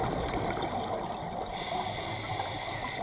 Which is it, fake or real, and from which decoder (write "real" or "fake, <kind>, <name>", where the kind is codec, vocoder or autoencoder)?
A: real